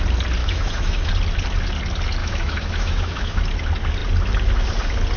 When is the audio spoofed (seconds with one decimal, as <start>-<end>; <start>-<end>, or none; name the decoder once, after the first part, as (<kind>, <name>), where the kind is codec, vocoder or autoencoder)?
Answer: 0.4-1.1 (autoencoder, DAC-VAE); 2.2-3.4